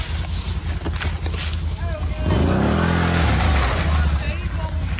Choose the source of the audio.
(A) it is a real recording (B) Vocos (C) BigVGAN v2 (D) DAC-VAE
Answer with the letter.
A